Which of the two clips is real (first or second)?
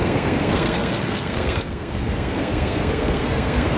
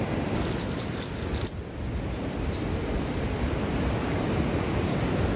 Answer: second